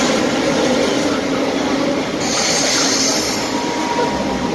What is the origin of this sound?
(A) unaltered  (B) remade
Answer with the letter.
A